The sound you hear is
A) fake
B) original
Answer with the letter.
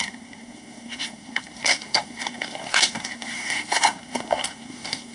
A